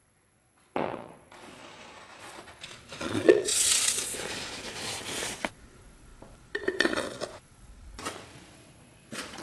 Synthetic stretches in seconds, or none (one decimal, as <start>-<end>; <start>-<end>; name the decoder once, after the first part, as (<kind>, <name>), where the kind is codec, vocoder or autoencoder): 0.0-1.6 (vocoder, Vocos); 2.2-9.4